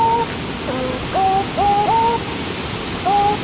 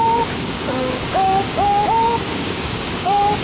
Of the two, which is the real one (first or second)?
first